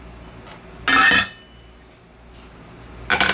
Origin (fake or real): real